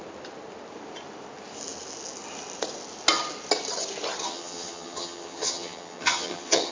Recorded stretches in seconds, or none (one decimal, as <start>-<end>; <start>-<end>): 0.0-4.2